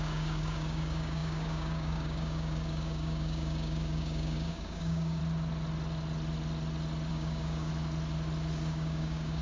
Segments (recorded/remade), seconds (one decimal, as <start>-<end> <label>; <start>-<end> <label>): 0.0-5.2 remade; 5.2-7.1 recorded; 7.1-7.7 remade; 7.7-8.7 recorded; 8.7-9.4 remade